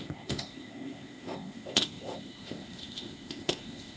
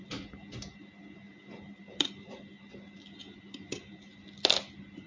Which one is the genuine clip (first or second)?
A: second